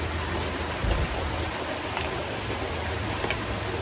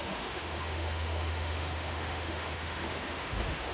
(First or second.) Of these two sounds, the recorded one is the first